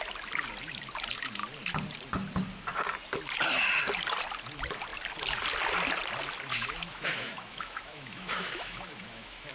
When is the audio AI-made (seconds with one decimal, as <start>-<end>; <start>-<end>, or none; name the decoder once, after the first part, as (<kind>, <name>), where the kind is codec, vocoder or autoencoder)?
6.5-9.5 (autoencoder, DAC-VAE)